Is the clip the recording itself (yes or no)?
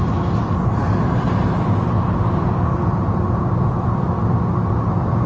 yes